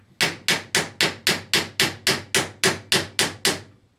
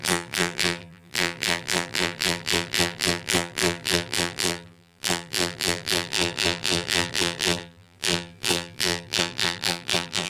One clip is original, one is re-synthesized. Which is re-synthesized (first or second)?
second